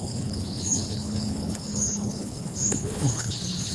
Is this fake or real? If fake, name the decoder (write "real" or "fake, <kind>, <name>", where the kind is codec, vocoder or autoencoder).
fake, codec, HILCodec